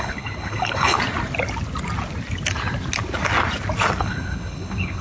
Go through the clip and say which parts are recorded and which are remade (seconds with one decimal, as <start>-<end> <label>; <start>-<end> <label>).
0.0-1.0 remade; 1.0-4.0 recorded; 4.0-5.0 remade